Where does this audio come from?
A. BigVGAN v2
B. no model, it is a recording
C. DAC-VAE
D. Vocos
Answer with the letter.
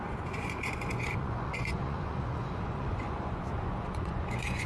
D